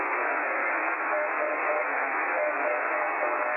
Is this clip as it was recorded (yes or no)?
no